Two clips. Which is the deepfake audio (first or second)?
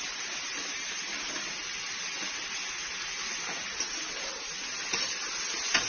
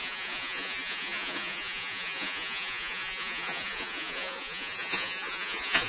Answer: second